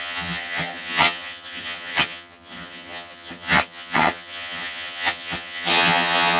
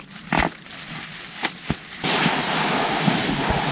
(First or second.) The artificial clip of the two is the first